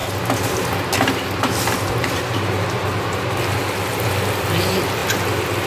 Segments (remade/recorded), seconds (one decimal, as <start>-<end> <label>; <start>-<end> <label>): 0.0-5.7 recorded